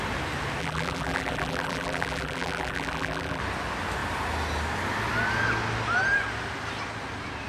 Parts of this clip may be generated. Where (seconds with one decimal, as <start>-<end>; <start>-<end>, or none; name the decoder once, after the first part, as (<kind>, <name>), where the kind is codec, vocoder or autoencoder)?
0.6-3.4 (vocoder, BigVGAN v2)